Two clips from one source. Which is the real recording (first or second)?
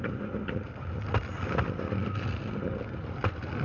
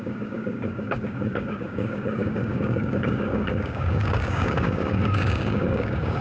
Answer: first